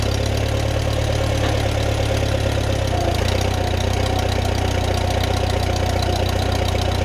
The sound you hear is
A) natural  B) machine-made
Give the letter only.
A